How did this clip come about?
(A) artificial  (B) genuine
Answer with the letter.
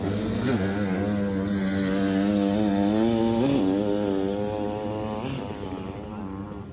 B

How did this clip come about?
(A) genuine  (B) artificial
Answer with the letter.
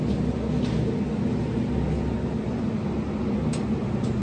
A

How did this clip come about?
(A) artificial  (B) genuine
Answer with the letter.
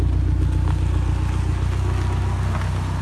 B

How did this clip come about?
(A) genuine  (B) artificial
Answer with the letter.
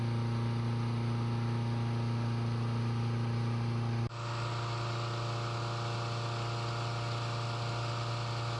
A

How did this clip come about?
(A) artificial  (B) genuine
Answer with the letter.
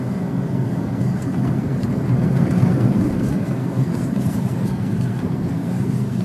A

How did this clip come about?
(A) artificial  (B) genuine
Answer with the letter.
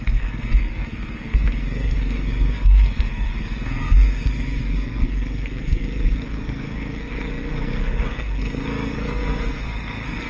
A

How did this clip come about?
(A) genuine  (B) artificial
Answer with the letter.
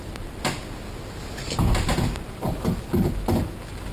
A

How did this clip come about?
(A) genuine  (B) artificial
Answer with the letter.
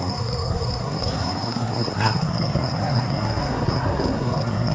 B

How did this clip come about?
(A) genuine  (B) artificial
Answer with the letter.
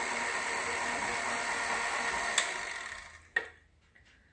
A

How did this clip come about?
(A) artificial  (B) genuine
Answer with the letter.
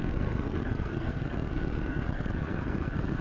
A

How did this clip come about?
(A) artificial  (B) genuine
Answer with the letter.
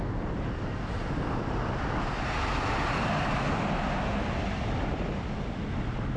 B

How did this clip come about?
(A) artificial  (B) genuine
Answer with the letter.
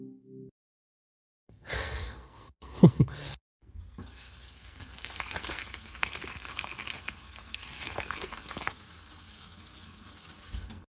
A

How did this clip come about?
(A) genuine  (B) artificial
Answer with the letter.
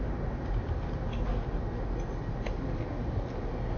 A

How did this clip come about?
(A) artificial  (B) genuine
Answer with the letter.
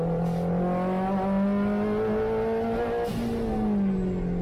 B